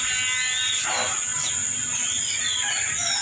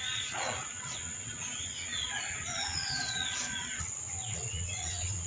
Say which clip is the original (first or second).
first